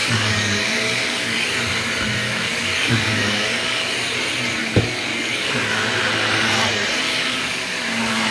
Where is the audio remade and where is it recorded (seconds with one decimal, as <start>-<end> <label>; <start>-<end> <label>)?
0.0-1.5 remade; 1.5-2.2 recorded; 2.2-3.9 remade; 3.9-4.6 recorded; 4.6-5.8 remade; 5.8-7.0 recorded; 7.0-8.3 remade